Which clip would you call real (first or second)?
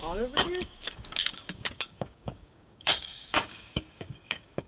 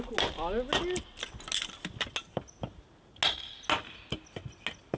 second